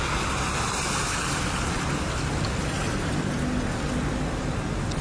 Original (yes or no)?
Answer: yes